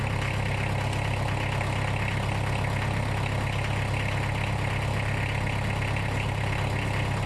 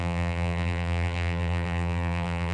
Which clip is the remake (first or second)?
second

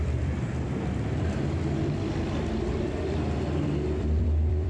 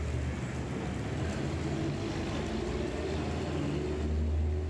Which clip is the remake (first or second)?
first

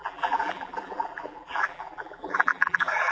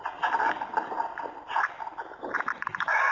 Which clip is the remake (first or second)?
first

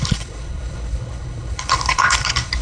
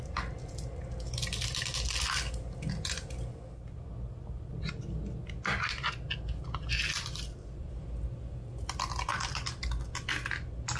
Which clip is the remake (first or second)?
first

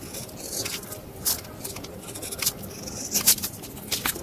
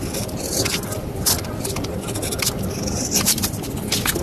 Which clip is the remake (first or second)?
second